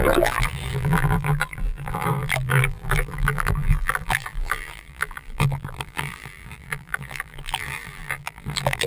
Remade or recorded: remade